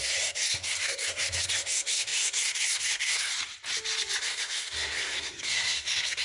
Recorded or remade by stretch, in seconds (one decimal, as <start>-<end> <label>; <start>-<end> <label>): 0.0-3.3 remade; 3.3-4.2 recorded; 4.2-6.2 remade